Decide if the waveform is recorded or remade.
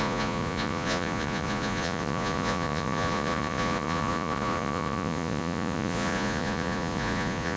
remade